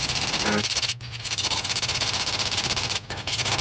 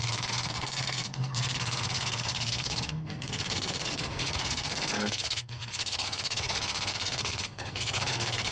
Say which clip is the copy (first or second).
second